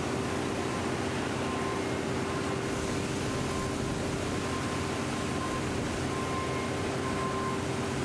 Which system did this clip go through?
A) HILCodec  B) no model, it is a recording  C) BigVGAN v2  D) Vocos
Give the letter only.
B